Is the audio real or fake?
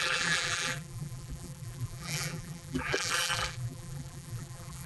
fake